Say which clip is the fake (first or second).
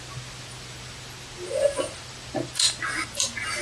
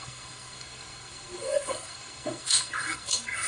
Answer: second